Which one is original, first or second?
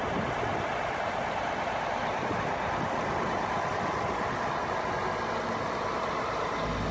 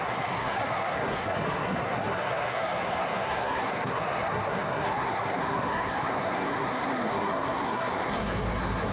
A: first